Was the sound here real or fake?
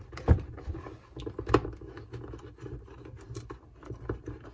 real